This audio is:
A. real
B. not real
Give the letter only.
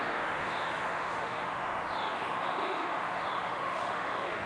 B